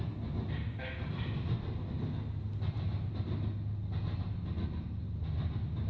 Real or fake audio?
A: real